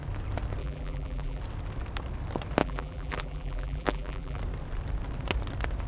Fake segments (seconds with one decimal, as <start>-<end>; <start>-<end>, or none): 0.6-1.4; 2.6-4.4